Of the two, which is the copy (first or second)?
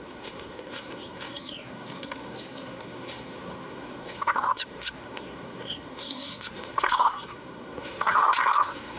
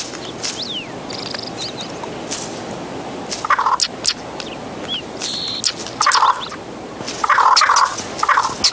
first